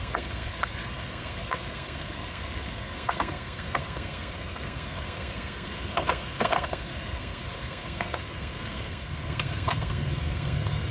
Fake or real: fake